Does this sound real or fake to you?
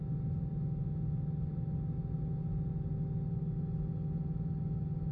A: real